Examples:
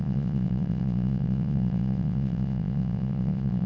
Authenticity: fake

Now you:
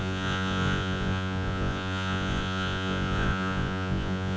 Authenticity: fake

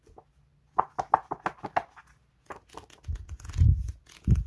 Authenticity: real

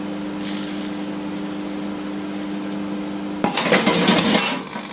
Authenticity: real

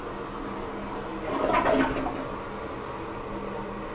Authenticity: real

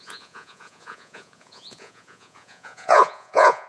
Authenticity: fake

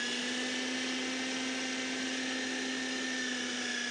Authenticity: real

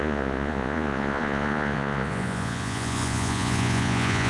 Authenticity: fake